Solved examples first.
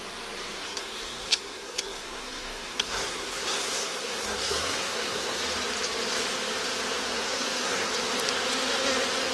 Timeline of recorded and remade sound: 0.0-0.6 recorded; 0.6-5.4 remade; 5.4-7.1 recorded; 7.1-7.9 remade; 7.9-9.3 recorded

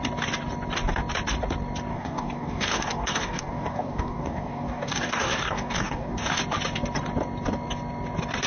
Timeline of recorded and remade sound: 0.0-1.9 recorded; 1.9-6.4 remade; 6.4-8.5 recorded

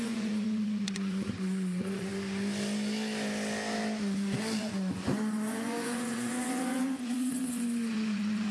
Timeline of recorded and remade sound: 0.0-2.1 remade; 2.1-4.6 recorded; 4.6-8.5 remade

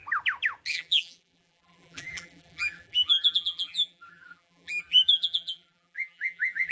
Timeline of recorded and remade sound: 0.0-0.7 recorded; 0.7-6.7 remade